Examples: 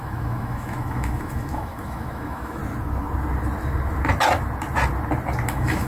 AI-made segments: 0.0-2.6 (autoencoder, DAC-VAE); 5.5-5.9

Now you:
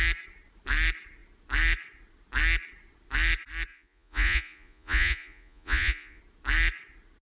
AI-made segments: 3.7-6.2 (vocoder, Vocos)

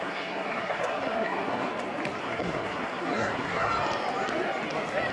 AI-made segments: 0.0-1.7 (codec, SNAC); 2.2-3.7

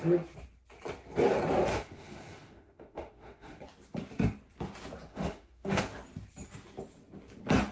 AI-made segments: 1.7-3.6 (autoencoder, DAC-VAE); 5.1-5.8